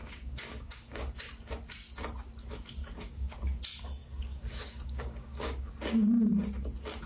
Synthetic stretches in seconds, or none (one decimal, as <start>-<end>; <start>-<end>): 0.0-1.3; 2.8-3.6; 4.0-5.7